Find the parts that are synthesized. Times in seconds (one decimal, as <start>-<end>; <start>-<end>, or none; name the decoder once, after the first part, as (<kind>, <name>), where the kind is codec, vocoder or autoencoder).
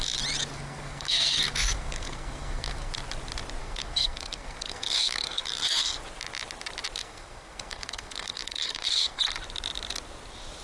0.5-2.9 (codec, SNAC); 3.6-6.0; 7.0-9.2